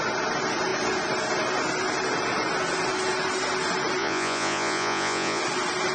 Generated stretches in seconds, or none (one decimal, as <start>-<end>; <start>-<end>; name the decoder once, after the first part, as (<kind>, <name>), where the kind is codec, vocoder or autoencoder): 4.0-5.4 (vocoder, Vocos)